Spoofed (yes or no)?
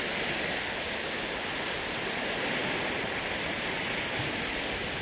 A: no